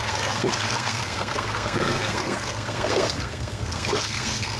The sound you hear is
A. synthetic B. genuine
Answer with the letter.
A